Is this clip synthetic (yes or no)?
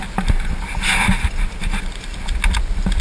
no